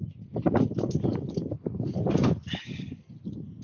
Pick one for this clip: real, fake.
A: real